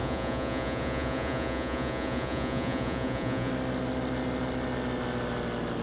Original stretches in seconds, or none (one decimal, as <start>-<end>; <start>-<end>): 3.5-5.8